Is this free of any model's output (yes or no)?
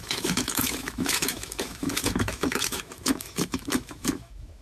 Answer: no